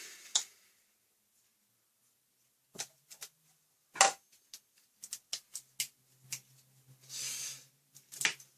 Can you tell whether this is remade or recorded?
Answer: recorded